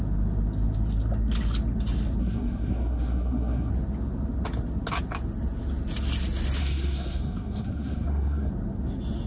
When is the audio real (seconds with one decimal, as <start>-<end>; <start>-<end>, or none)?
0.0-2.2; 3.7-6.6; 8.5-9.3